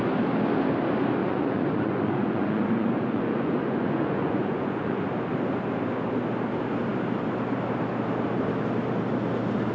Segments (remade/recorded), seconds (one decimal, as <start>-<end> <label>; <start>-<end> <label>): 0.0-1.2 recorded; 1.2-5.0 remade; 5.0-9.7 recorded